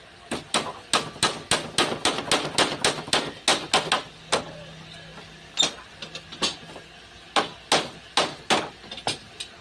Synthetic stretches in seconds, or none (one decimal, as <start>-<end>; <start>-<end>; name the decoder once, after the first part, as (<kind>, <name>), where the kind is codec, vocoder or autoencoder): none